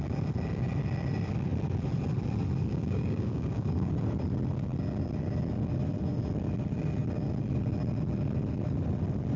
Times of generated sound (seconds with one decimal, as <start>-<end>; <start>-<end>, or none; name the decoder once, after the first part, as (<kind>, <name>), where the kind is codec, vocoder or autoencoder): 2.7-3.9 (codec, DAC)

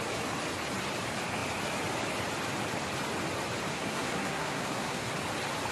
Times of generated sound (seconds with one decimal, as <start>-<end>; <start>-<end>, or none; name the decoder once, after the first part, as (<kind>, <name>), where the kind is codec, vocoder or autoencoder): 3.7-5.1 (codec, SNAC)